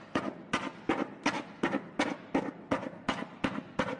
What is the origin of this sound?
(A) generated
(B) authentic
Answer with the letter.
B